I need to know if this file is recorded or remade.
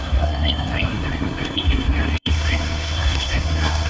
remade